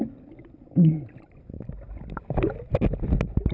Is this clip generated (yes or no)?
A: no